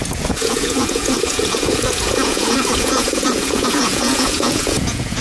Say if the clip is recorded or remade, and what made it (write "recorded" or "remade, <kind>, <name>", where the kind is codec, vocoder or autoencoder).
remade, vocoder, Vocos